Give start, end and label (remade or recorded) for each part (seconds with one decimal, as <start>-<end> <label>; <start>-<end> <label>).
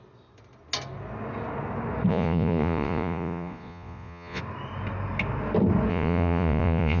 0.0-2.1 recorded; 2.1-4.4 remade; 4.4-5.9 recorded; 5.9-7.0 remade